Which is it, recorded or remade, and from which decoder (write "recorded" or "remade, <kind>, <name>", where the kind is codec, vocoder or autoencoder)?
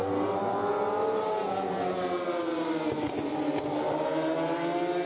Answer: recorded